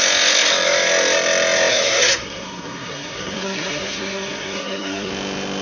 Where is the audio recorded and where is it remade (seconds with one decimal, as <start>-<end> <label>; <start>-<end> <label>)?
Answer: 0.0-1.7 recorded; 1.7-5.1 remade; 5.1-5.6 recorded